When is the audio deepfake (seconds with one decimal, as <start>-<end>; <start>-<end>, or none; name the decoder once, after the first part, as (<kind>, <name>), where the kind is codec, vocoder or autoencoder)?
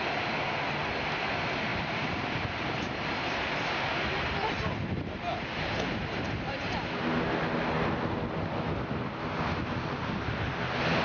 1.7-3.9 (vocoder, BigVGAN v2)